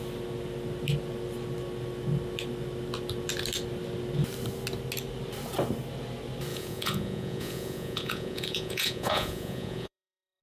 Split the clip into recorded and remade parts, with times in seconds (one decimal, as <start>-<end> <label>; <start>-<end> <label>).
0.0-6.5 recorded; 6.5-10.4 remade